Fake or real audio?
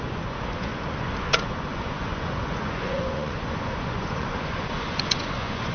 fake